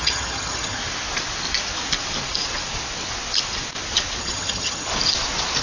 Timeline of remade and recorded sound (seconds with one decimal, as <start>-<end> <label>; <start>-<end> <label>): 0.0-0.8 remade; 0.8-4.2 recorded; 4.2-4.9 remade; 4.9-5.6 recorded